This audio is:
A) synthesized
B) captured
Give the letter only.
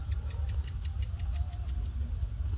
B